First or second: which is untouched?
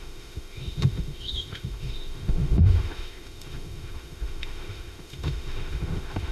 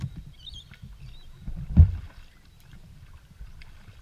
second